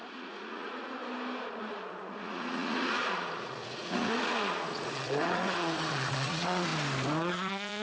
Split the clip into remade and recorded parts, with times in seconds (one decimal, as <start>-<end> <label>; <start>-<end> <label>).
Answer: 0.0-1.0 remade; 1.0-1.5 recorded; 1.5-6.7 remade; 6.7-7.3 recorded; 7.3-7.8 remade